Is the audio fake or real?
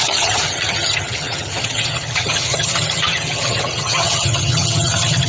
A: fake